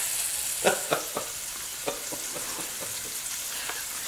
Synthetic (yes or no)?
no